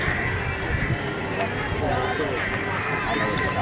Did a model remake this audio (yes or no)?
no